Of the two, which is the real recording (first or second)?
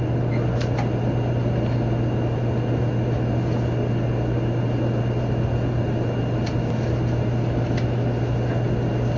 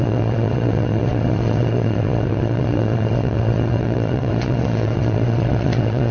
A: first